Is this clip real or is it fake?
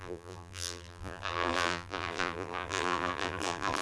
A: fake